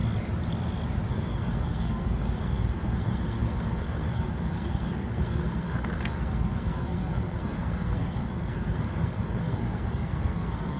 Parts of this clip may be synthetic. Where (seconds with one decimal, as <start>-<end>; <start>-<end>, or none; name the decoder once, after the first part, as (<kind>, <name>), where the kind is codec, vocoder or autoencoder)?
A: 1.1-10.8 (codec, SNAC)